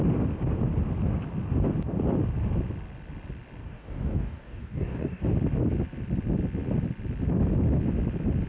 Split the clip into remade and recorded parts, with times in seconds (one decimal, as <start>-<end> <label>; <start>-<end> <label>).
0.0-3.6 recorded; 3.6-5.2 remade; 5.2-8.5 recorded